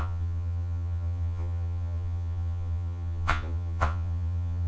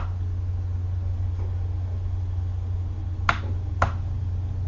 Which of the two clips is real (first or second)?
second